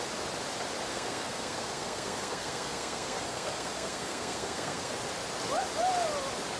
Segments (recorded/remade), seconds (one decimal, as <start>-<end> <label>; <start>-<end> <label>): 0.0-0.9 recorded; 0.9-4.9 remade; 4.9-6.6 recorded